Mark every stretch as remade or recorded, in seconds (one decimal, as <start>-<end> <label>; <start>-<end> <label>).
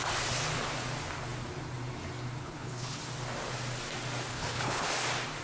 0.0-2.4 recorded; 2.4-3.0 remade; 3.0-4.3 recorded; 4.3-4.9 remade; 4.9-5.4 recorded